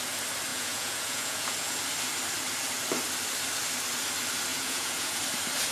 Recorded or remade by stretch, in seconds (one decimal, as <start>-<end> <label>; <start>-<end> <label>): 0.0-0.5 recorded; 0.5-1.8 remade; 1.8-4.5 recorded; 4.5-5.2 remade; 5.2-5.7 recorded